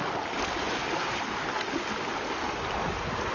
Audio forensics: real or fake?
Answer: real